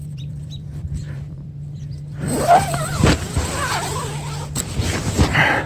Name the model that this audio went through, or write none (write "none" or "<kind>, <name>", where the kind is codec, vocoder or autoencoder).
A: vocoder, BigVGAN v2